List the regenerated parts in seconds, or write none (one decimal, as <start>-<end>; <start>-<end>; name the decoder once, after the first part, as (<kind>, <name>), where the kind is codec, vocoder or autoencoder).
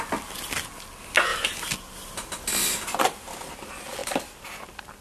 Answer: none